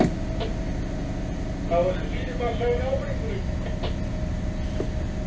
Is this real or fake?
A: real